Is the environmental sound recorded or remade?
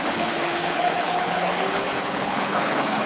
remade